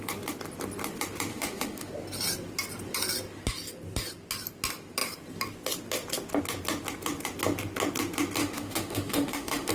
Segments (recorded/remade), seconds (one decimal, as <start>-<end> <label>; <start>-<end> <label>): 0.0-1.3 recorded; 1.3-1.9 remade; 1.9-8.4 recorded; 8.4-9.7 remade